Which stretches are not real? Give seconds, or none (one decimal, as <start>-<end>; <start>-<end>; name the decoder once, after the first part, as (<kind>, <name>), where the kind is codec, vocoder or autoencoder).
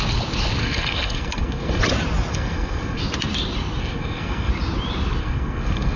0.6-1.8 (codec, SNAC); 2.3-3.0; 3.8-4.5; 5.2-6.0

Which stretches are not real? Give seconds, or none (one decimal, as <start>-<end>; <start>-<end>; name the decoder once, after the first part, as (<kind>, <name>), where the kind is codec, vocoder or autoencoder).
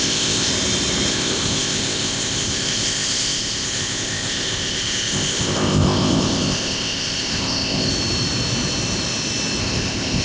0.0-0.5 (codec, ZipCodec); 1.1-7.9; 9.6-10.2